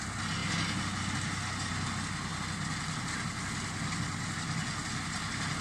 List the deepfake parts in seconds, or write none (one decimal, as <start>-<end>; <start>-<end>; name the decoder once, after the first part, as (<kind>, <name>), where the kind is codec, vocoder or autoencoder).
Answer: 2.3-5.6 (vocoder, BigVGAN v2)